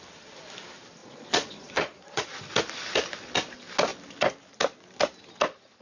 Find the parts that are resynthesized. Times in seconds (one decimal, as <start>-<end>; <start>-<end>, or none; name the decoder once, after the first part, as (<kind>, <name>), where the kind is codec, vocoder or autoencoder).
1.0-2.3 (vocoder, Vocos)